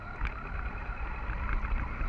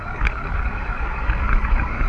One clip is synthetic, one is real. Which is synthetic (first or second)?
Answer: second